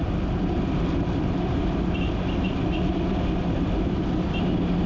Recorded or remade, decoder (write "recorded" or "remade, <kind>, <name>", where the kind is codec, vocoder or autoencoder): recorded